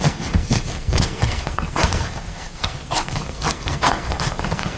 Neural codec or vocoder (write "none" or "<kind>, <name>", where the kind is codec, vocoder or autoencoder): codec, SNAC